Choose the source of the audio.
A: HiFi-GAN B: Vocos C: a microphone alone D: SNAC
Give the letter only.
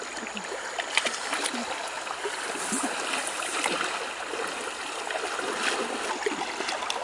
C